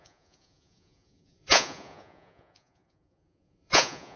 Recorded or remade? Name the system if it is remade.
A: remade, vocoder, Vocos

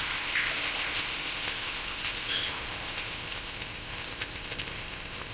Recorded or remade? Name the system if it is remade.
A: remade, codec, ZipCodec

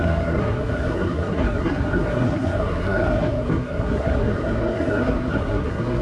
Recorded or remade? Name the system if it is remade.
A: remade, codec, SNAC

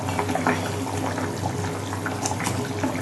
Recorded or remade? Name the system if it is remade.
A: recorded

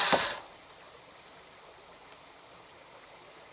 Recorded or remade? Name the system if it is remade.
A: recorded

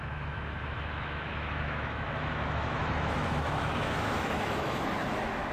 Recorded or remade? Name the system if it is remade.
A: remade, autoencoder, DAC-VAE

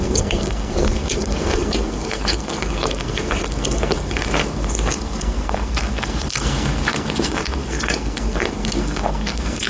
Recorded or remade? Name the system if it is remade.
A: remade, codec, SNAC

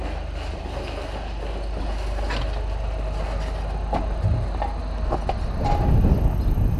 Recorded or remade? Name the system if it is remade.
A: recorded